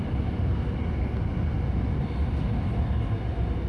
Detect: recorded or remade recorded